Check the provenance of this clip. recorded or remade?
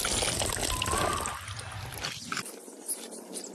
recorded